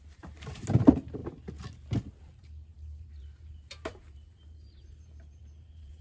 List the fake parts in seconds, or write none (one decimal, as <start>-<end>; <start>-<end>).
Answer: 0.0-1.2; 2.2-6.0